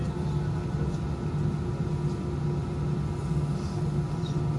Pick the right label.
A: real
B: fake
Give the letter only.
A